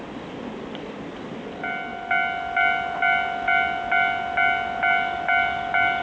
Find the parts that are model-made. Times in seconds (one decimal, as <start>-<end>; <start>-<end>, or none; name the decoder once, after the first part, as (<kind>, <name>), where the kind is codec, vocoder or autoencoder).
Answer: none